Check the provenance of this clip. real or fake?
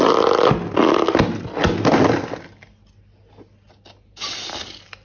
real